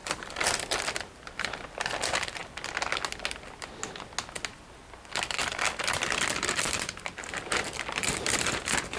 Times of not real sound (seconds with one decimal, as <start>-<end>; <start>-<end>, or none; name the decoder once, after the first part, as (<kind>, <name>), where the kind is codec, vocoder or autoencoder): 0.0-0.9 (vocoder, BigVGAN v2); 5.4-8.0